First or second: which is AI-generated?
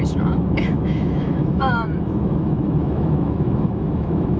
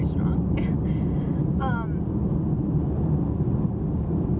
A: first